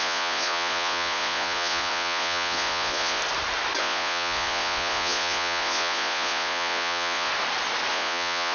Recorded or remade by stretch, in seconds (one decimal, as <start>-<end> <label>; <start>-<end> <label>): 0.0-3.2 remade; 3.2-3.8 recorded; 3.8-7.3 remade; 7.3-7.9 recorded; 7.9-8.5 remade